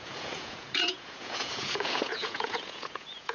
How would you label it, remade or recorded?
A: remade